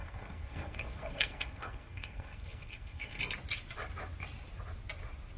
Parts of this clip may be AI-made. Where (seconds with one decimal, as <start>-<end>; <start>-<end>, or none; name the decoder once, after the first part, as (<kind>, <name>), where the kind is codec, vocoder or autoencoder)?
0.0-3.2 (codec, SNAC)